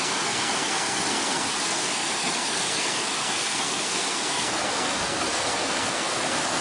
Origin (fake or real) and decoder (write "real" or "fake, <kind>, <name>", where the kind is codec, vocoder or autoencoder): fake, codec, SNAC